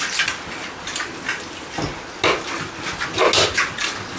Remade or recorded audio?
recorded